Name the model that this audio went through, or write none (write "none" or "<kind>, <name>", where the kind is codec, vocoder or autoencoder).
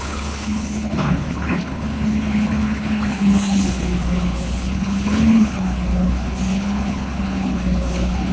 codec, HILCodec